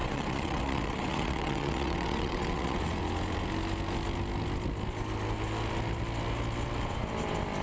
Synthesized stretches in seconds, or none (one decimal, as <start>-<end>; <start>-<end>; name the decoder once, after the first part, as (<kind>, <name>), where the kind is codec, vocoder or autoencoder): 0.0-3.0 (vocoder, WaveNeXt)